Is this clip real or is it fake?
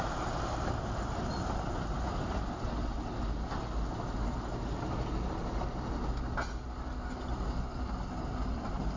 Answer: real